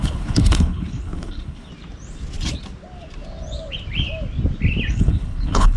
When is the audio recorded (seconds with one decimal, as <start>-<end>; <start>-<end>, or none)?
1.7-4.9

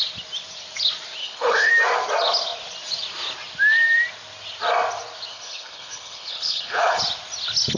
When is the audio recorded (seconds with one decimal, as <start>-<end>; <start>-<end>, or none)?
0.0-1.2; 1.7-5.3; 7.0-7.8

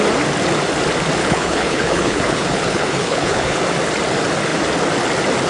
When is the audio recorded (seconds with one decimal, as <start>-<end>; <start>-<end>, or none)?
0.0-1.2; 3.6-5.5

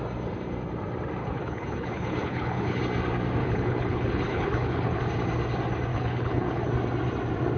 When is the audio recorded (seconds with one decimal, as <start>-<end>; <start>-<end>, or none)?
0.0-1.2; 2.8-3.4; 5.0-5.9; 6.7-7.6

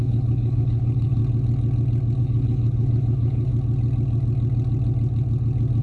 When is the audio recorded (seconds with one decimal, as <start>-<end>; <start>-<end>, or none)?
1.2-2.2; 3.5-5.8

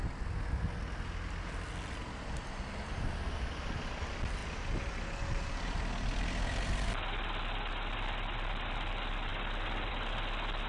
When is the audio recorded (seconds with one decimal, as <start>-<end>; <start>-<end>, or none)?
0.0-10.7